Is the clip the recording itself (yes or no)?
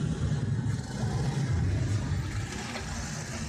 yes